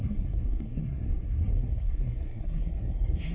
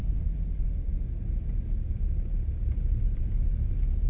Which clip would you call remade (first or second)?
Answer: first